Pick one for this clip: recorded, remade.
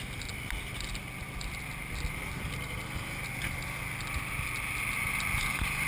recorded